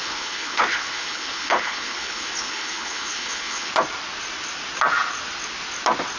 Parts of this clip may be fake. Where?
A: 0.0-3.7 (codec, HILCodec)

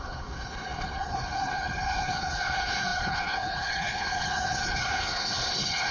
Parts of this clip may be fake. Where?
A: 0.0-5.9 (codec, HILCodec)

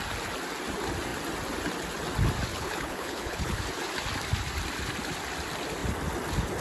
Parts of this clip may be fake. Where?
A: 2.5-3.6 (codec, HILCodec)

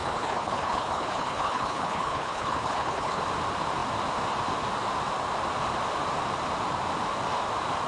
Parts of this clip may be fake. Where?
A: 0.0-3.2 (codec, HILCodec)

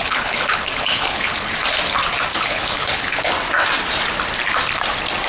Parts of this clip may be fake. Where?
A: 0.0-1.5 (codec, HILCodec); 2.3-3.3

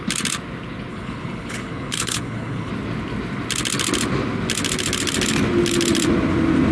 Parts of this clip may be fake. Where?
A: 0.9-2.7 (codec, HILCodec)

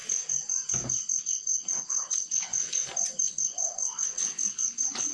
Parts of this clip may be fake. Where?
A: 1.2-2.5 (codec, HILCodec); 3.2-5.1

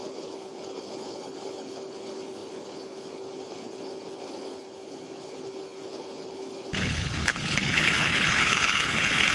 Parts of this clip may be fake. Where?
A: 0.0-9.3 (codec, HILCodec)